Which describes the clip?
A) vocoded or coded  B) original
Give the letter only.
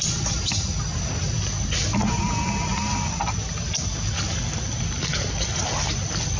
B